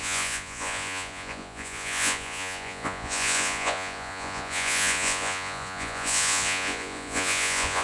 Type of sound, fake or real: fake